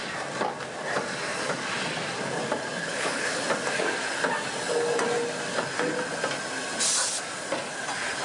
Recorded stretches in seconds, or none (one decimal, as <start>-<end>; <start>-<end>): 0.0-2.8; 3.4-8.2